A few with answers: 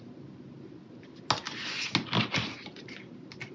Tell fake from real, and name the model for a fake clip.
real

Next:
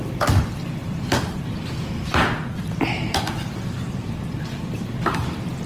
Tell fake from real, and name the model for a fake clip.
fake, vocoder, BigVGAN v2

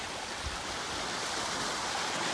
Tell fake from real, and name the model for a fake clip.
real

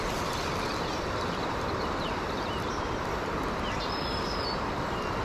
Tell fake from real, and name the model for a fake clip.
real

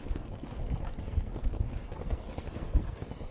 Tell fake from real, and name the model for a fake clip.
fake, codec, SNAC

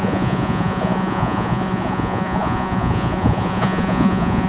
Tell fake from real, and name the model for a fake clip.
fake, vocoder, Vocos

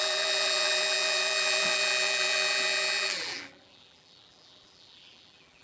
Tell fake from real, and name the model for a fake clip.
fake, vocoder, BigVGAN v2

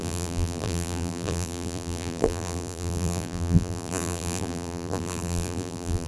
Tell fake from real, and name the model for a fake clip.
fake, vocoder, BigVGAN v2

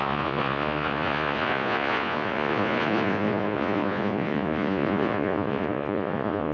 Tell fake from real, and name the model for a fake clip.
fake, vocoder, Vocos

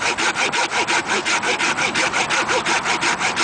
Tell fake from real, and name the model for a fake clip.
fake, vocoder, BigVGAN v2